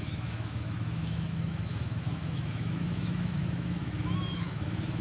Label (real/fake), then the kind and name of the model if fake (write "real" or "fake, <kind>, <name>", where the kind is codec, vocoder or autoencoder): fake, autoencoder, DAC-VAE